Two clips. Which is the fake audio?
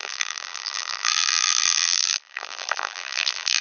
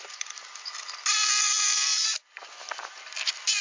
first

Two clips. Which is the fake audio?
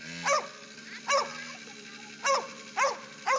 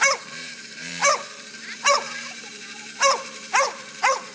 second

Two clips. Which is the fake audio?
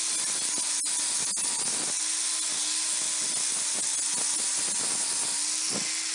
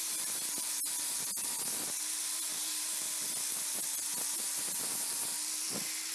second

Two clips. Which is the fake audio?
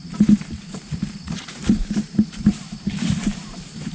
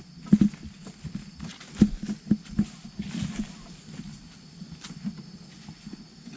first